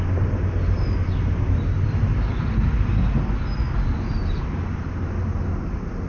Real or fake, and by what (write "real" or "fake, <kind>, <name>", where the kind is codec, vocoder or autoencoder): real